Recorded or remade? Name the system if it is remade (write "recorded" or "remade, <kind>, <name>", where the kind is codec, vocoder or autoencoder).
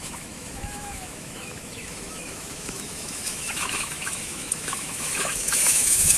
remade, autoencoder, DAC-VAE